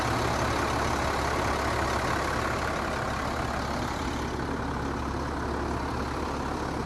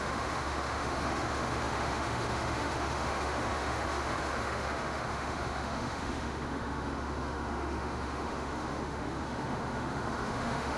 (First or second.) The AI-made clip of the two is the second